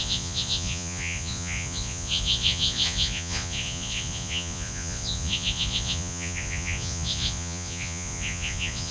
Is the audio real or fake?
fake